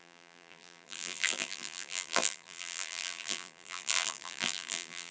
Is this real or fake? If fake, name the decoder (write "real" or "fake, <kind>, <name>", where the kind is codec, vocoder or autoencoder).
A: fake, vocoder, BigVGAN v2